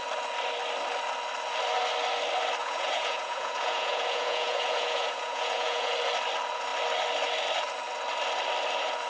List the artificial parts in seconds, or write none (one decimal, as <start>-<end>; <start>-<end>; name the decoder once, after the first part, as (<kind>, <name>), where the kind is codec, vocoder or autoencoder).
2.6-5.9 (vocoder, Vocos)